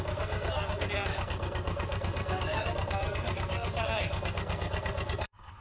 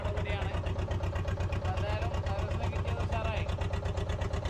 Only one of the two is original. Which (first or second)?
second